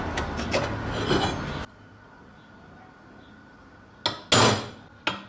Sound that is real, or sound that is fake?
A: real